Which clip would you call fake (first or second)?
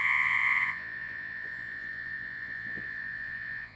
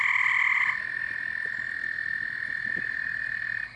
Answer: first